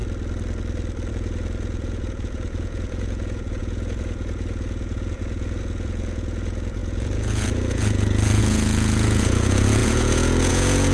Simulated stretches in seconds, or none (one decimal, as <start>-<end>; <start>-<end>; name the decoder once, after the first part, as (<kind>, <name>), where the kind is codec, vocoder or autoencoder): 1.1-10.9 (vocoder, Vocos)